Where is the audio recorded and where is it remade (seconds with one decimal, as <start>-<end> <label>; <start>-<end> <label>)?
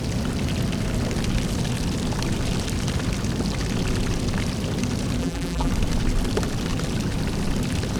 0.0-5.2 recorded; 5.2-5.7 remade; 5.7-8.0 recorded